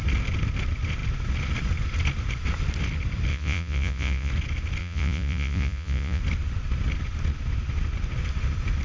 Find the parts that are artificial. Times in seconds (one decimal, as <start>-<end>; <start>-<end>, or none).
3.3-4.3; 4.8-6.2

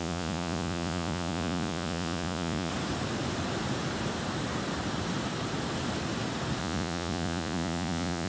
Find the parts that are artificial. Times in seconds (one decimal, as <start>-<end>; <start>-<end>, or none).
0.0-2.7; 6.6-8.3